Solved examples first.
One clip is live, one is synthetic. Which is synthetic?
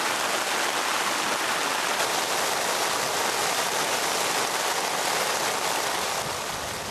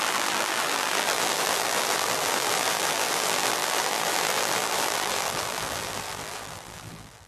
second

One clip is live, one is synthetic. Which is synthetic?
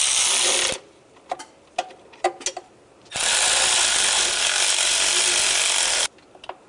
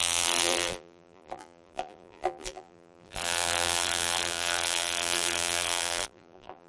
second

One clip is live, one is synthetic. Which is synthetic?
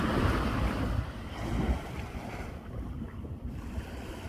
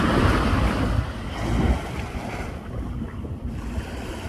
first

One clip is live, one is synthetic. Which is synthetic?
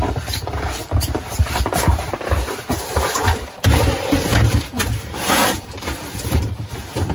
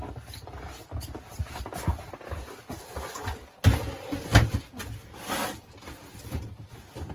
first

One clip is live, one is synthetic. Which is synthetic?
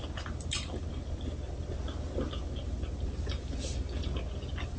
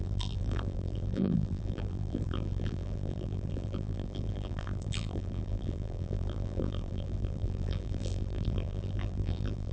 second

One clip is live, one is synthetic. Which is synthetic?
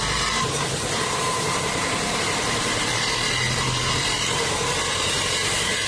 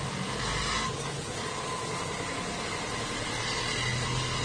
first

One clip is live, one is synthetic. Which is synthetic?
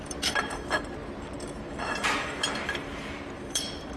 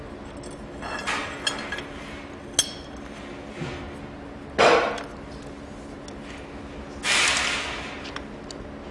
first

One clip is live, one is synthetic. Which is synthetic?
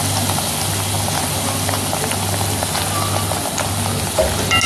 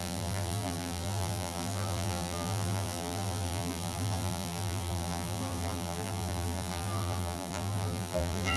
second